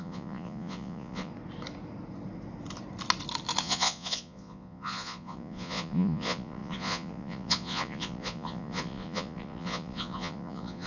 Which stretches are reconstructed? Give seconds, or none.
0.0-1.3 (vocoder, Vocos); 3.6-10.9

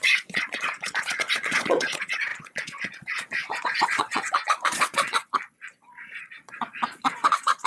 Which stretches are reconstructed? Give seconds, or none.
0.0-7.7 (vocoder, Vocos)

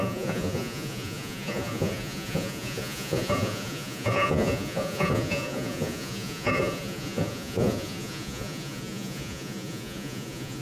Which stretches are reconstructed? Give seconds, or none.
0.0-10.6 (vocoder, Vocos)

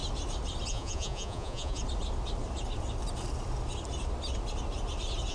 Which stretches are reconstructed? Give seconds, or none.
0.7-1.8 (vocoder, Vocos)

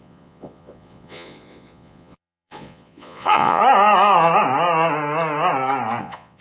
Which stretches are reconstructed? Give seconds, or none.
0.0-3.6 (vocoder, Vocos); 6.0-6.4

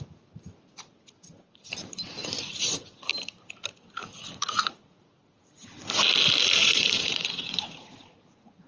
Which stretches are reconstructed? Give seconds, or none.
2.2-3.1 (vocoder, Vocos); 4.0-5.3; 6.6-8.7